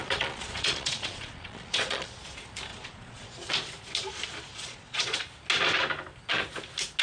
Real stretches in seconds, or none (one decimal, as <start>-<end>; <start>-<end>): 2.2-2.7; 3.5-4.5; 5.2-7.0